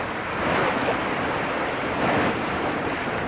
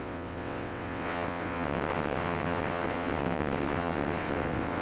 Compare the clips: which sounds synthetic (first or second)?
second